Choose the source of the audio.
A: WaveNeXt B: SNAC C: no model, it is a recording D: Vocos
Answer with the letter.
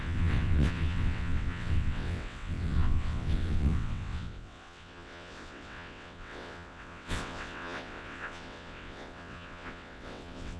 A